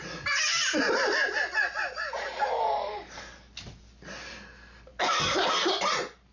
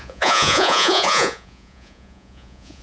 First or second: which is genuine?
first